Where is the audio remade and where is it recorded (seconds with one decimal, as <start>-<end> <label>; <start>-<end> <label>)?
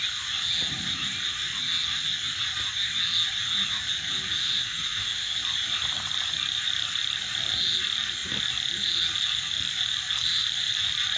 0.0-4.4 recorded; 4.4-5.3 remade; 5.3-11.2 recorded